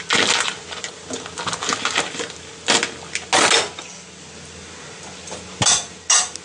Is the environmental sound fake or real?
real